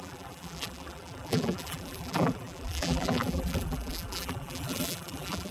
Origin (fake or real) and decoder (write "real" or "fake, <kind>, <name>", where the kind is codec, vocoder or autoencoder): fake, vocoder, BigVGAN v2